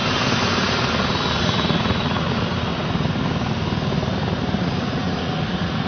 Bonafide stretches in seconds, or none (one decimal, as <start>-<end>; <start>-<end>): 0.0-1.4; 2.7-4.6